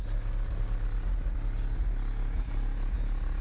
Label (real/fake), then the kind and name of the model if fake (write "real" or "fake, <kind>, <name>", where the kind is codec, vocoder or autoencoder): real